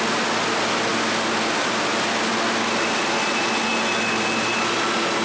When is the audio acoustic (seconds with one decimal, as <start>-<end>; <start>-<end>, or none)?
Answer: 0.0-5.2